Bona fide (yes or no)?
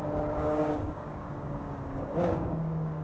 no